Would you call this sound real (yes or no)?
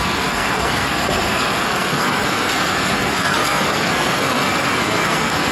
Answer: no